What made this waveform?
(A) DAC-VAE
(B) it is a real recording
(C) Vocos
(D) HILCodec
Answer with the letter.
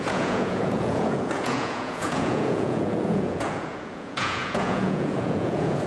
C